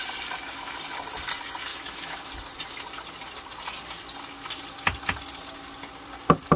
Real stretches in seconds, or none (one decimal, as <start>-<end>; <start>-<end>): 0.0-1.7; 2.3-6.6